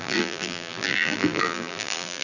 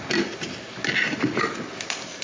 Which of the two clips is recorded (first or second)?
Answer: second